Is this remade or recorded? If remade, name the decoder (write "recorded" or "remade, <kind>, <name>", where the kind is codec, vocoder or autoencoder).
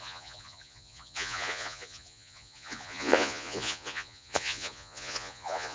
remade, vocoder, Vocos